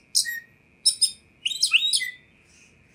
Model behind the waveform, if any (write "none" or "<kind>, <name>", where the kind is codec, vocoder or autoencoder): none